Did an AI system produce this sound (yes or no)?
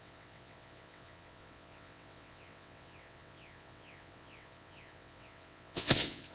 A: yes